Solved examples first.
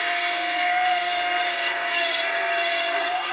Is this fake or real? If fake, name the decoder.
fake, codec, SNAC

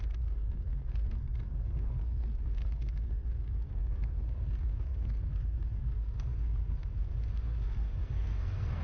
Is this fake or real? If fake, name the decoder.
fake, codec, SNAC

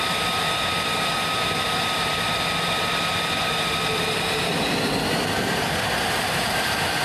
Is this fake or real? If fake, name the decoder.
real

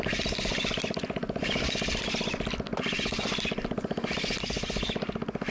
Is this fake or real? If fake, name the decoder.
real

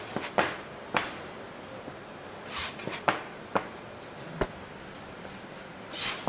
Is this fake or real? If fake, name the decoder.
real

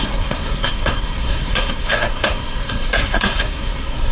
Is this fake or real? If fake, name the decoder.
fake, codec, SNAC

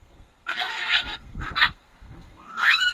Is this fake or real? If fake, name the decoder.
fake, codec, SNAC